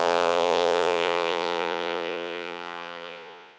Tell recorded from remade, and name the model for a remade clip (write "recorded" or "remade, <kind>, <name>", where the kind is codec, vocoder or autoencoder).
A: remade, vocoder, Vocos